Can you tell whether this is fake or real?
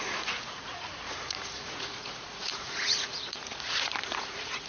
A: fake